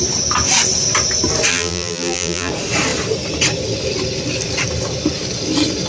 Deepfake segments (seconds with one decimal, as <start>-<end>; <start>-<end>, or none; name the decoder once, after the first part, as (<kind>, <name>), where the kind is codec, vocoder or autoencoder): 1.5-2.5 (vocoder, BigVGAN v2)